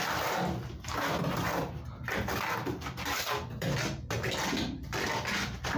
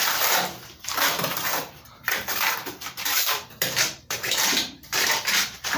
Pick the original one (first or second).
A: first